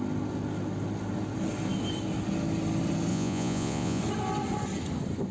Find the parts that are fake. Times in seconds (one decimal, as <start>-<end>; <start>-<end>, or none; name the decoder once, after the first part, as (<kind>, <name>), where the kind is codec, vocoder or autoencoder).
3.1-4.0 (vocoder, Vocos)